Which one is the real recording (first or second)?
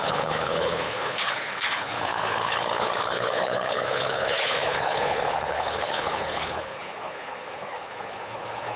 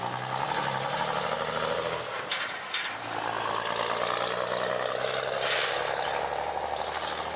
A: second